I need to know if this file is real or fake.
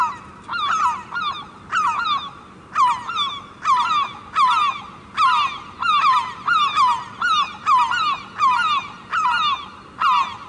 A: real